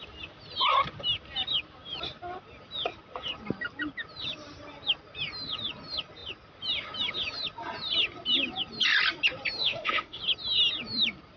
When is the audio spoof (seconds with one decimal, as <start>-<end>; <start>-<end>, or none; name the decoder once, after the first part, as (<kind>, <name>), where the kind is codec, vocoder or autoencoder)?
9.6-10.2 (autoencoder, DAC-VAE)